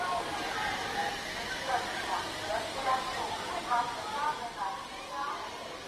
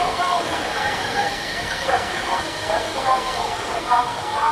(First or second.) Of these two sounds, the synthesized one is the second